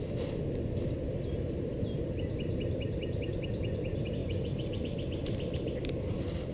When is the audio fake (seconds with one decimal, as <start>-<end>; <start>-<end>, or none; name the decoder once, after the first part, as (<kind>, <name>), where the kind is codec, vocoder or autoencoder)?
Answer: 1.1-1.7 (vocoder, BigVGAN v2); 4.2-4.8